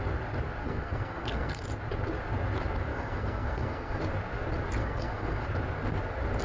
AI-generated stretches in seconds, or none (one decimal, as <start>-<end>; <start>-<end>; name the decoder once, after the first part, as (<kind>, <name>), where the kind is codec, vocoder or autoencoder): 0.6-1.6 (codec, SNAC); 2.9-4.0; 4.8-5.4